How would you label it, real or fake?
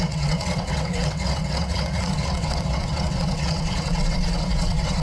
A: fake